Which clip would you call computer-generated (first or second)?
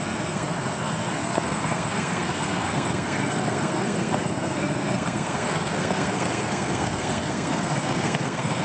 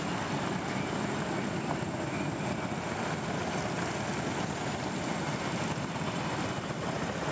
first